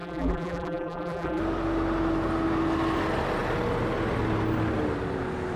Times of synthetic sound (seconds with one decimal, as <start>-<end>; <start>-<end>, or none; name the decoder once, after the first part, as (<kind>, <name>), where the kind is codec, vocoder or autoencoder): 0.0-1.4 (vocoder, BigVGAN v2)